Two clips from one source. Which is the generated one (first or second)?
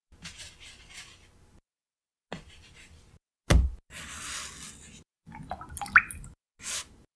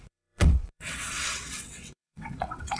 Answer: second